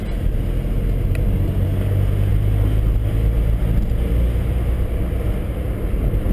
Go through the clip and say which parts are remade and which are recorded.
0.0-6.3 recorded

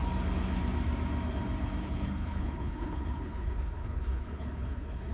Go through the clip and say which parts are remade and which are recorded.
0.0-1.8 recorded; 1.8-5.1 remade

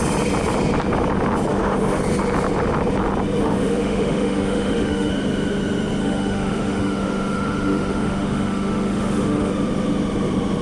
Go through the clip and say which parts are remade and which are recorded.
0.0-1.5 recorded; 1.5-2.0 remade; 2.0-3.4 recorded; 3.4-5.1 remade; 5.1-6.0 recorded; 6.0-9.5 remade; 9.5-10.6 recorded

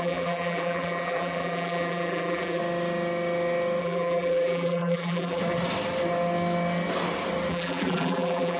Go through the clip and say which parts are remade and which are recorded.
0.0-2.6 remade; 2.6-3.8 recorded; 3.8-5.4 remade; 5.4-7.5 recorded; 7.5-8.6 remade